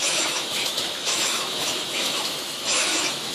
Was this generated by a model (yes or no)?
yes